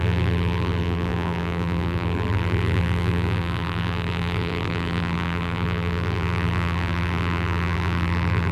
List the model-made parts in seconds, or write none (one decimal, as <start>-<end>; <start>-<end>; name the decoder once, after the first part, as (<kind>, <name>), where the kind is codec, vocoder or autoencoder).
0.0-8.5 (vocoder, BigVGAN v2)